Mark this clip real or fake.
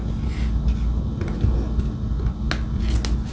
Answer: real